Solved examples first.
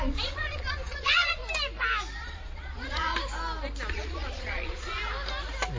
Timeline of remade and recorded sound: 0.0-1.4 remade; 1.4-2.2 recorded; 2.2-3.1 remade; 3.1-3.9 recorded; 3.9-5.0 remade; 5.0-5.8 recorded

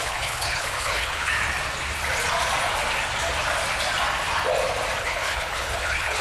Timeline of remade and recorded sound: 0.0-1.3 remade; 1.3-5.0 recorded; 5.0-6.2 remade